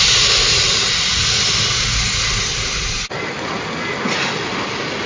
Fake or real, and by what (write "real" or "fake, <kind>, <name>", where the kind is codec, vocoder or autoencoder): real